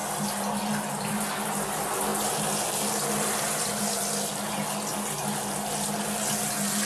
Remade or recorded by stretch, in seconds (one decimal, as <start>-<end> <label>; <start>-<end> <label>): 0.0-6.9 recorded